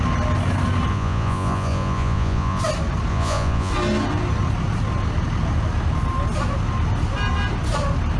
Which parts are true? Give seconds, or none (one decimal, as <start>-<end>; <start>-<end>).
0.0-0.9; 2.6-3.1; 3.7-8.2

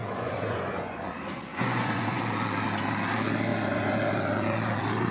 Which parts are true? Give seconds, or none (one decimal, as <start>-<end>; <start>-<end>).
1.1-1.5; 2.2-3.5; 4.0-5.1

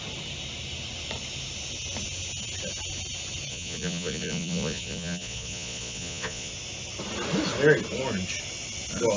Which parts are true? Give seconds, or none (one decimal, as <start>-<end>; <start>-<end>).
0.0-3.5; 6.5-9.2